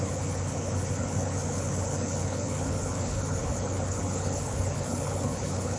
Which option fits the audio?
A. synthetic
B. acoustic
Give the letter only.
A